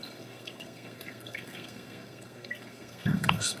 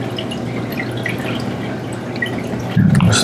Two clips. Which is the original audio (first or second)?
second